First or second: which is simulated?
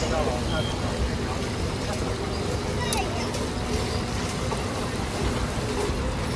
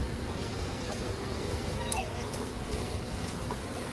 second